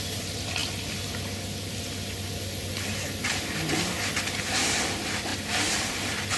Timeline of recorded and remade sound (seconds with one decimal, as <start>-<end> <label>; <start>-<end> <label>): 0.0-6.4 recorded